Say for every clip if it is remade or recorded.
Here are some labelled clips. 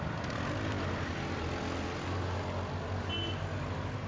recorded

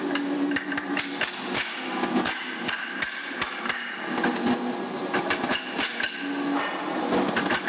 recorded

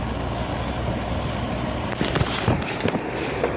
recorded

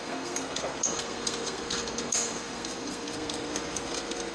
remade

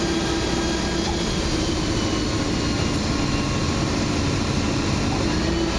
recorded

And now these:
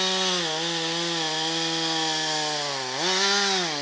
recorded